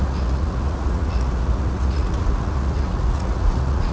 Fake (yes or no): yes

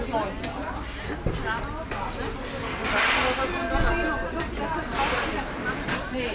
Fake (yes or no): no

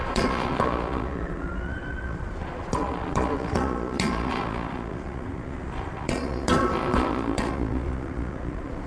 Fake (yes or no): yes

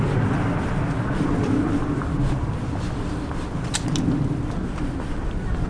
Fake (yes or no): no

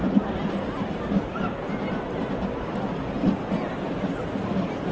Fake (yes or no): no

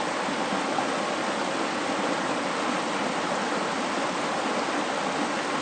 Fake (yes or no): no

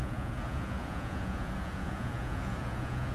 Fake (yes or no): yes